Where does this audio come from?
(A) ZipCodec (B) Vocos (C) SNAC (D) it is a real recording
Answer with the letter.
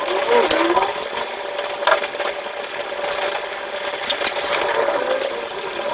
D